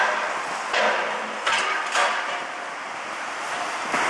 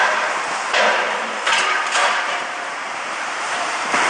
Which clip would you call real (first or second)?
first